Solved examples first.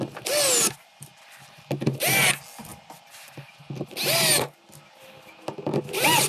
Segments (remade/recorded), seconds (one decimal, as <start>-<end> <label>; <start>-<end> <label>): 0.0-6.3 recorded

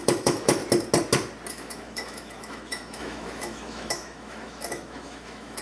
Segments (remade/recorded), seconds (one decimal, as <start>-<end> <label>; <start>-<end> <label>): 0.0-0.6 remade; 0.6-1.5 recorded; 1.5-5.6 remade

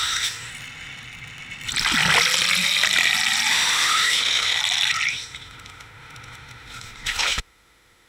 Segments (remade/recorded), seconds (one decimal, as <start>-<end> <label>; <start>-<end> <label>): 0.0-0.5 remade; 0.5-3.5 recorded; 3.5-4.6 remade; 4.6-5.1 recorded; 5.1-8.1 remade